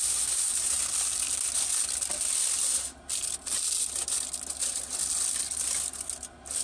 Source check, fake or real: real